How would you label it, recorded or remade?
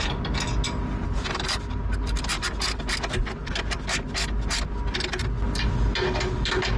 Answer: recorded